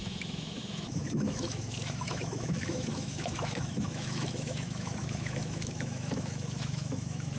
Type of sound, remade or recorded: remade